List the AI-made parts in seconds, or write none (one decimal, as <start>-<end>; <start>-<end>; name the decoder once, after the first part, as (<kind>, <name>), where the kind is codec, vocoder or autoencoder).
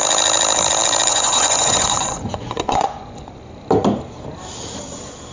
1.1-3.4 (vocoder, Vocos)